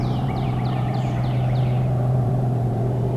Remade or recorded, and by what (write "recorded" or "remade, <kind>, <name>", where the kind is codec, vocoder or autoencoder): remade, vocoder, BigVGAN v2